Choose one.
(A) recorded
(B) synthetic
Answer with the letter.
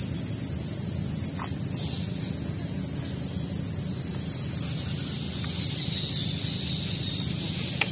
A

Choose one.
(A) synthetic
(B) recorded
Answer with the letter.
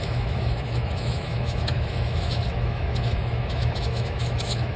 A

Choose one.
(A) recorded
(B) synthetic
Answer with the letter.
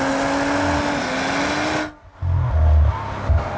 A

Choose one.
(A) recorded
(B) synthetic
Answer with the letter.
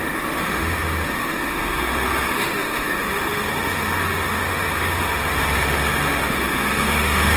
B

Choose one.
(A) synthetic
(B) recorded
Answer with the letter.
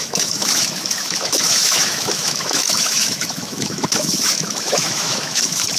A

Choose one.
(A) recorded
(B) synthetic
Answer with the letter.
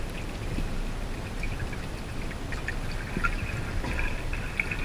A